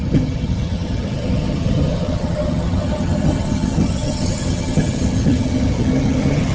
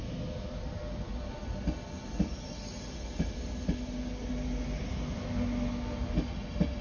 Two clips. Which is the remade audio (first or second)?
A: first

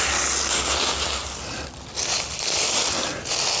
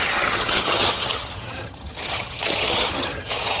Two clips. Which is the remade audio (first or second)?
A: second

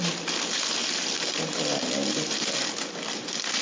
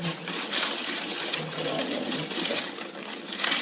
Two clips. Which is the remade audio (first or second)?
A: second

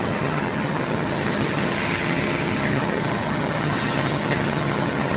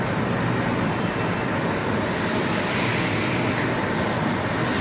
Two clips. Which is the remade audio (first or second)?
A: first